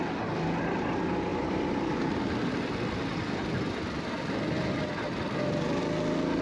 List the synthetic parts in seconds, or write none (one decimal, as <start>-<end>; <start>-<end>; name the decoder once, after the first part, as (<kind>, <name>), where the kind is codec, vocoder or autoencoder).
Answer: none